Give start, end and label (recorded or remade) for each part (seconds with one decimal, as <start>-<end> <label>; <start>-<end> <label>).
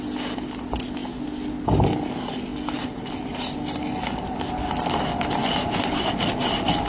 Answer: 0.0-6.9 recorded